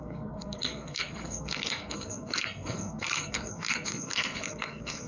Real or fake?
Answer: fake